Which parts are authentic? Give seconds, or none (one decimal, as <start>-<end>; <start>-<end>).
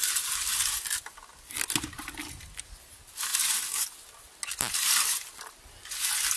0.0-6.4